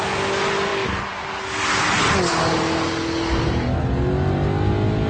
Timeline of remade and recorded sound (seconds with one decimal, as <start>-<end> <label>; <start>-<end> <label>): 0.0-5.1 recorded